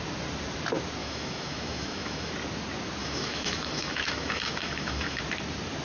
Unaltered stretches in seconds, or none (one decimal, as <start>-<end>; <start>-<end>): 0.0-1.0; 2.3-3.0; 5.2-5.8